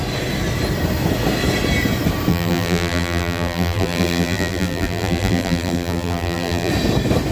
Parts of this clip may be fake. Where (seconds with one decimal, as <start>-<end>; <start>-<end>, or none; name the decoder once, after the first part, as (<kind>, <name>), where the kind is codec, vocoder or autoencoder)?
2.3-6.7 (vocoder, BigVGAN v2)